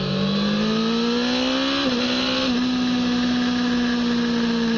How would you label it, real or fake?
real